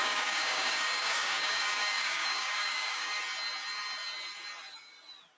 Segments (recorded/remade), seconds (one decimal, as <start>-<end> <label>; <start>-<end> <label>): 0.0-3.2 remade; 3.2-5.4 recorded